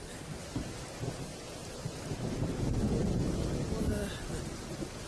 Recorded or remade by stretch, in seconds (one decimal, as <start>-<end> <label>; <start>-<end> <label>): 0.0-1.3 remade; 1.3-4.4 recorded; 4.4-5.1 remade